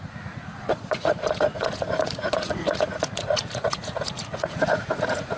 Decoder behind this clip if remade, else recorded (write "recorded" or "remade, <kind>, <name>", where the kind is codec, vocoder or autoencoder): remade, vocoder, Vocos